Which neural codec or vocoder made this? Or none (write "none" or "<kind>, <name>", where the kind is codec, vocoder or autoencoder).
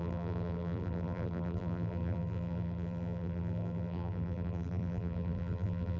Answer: vocoder, BigVGAN v2